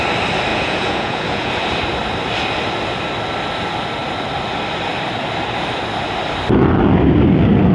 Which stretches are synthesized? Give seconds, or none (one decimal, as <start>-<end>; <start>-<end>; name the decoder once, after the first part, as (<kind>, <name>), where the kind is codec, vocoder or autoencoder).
0.5-1.5 (vocoder, Vocos)